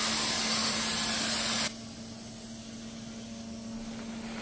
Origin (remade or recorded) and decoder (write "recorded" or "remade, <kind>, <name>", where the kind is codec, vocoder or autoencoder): recorded